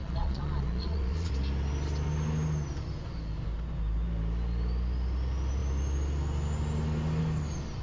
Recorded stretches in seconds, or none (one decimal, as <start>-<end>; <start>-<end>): 1.3-7.8